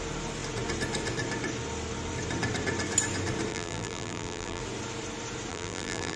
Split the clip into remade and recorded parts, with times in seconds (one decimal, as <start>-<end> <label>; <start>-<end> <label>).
0.0-3.5 recorded; 3.5-4.6 remade; 4.6-5.5 recorded; 5.5-6.2 remade